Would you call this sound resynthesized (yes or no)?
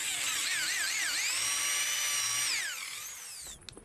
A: no